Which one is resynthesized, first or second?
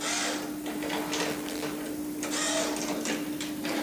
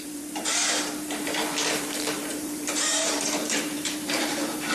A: second